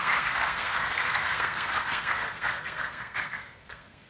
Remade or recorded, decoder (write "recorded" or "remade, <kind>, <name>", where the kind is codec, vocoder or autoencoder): remade, codec, SNAC